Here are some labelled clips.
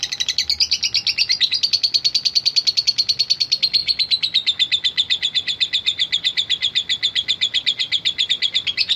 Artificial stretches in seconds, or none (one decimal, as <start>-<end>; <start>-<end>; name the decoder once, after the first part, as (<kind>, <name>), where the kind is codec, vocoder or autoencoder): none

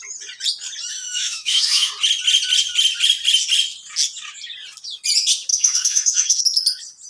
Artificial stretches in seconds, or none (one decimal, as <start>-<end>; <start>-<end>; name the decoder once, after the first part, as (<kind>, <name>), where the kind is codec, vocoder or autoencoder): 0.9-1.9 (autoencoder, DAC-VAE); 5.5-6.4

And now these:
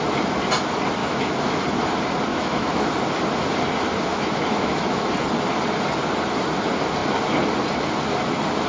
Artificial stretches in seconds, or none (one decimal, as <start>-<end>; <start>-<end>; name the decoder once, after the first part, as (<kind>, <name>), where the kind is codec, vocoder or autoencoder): 1.0-1.6 (autoencoder, DAC-VAE); 2.3-2.9; 4.1-5.1

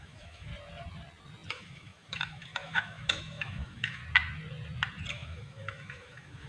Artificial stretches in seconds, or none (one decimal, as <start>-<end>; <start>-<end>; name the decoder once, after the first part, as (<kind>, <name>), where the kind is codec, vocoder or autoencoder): 0.0-0.5 (autoencoder, DAC-VAE); 1.5-4.0; 5.1-6.5

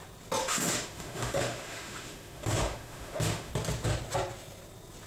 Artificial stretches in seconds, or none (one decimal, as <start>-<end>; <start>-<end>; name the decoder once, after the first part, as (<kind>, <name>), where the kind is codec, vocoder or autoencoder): 0.4-3.5 (autoencoder, DAC-VAE)

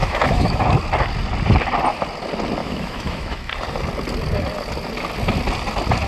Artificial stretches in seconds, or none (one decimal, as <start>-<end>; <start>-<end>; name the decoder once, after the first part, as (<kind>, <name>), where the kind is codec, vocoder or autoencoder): 0.0-0.6 (autoencoder, DAC-VAE); 2.6-3.5

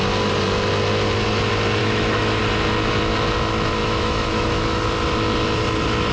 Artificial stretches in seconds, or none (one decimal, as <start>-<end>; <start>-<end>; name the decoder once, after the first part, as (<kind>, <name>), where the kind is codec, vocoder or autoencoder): 1.8-2.4 (autoencoder, DAC-VAE); 3.8-4.8